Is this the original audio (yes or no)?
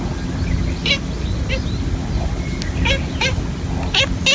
yes